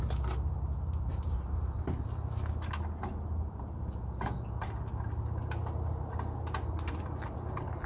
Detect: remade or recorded recorded